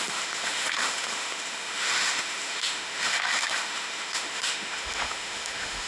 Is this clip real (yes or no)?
no